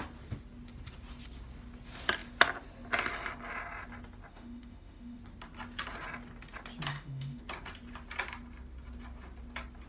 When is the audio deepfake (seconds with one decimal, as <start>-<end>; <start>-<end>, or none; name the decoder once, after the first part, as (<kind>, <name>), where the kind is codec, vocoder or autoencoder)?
4.3-5.2 (autoencoder, DAC-VAE); 6.9-7.4